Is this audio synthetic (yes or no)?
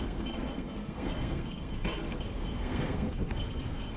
yes